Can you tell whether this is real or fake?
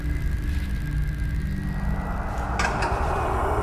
real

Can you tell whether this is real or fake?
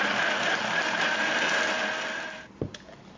real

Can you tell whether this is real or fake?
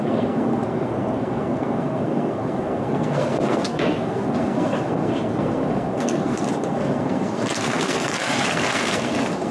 fake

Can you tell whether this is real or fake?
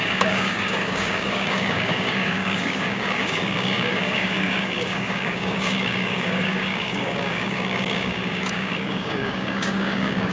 fake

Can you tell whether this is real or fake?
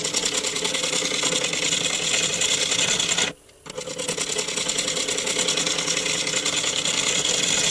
real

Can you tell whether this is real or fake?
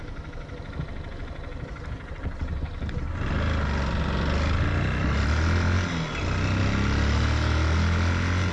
real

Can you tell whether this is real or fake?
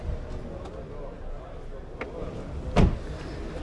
real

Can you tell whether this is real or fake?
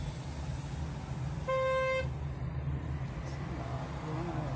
real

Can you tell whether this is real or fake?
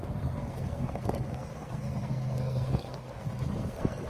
fake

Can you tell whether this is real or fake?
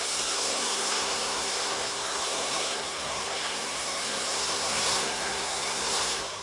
fake